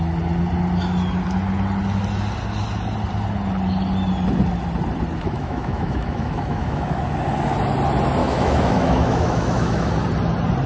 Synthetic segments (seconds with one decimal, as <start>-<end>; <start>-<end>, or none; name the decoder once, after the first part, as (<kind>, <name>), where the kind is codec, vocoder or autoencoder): 5.2-7.0 (autoencoder, DAC-VAE); 8.2-9.9